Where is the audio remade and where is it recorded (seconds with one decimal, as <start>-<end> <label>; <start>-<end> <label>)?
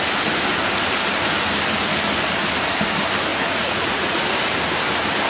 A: 0.0-3.3 recorded; 3.3-4.2 remade; 4.2-5.3 recorded